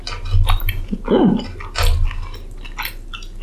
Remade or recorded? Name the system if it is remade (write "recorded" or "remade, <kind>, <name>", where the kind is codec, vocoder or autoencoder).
recorded